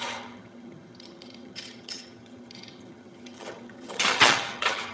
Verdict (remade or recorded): remade